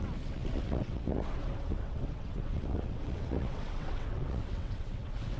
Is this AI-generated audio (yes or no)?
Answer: yes